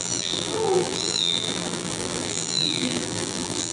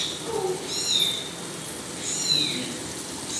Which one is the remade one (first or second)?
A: first